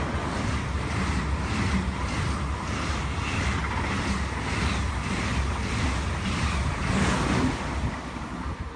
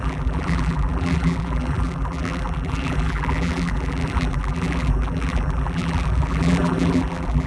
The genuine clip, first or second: first